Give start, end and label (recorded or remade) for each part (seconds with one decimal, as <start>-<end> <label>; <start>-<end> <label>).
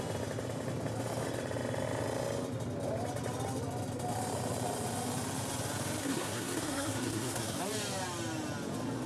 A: 0.0-6.0 recorded; 6.0-7.6 remade; 7.6-9.1 recorded